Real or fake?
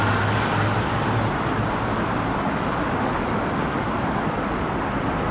real